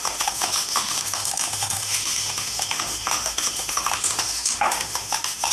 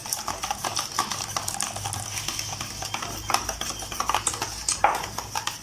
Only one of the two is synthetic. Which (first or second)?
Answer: first